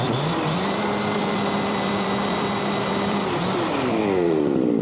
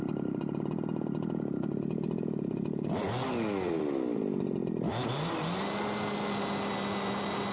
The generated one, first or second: first